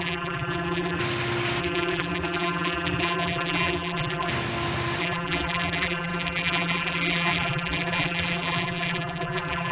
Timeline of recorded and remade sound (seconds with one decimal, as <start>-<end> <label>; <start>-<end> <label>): 0.0-1.0 remade; 1.0-1.6 recorded; 1.6-4.3 remade; 4.3-5.0 recorded; 5.0-9.7 remade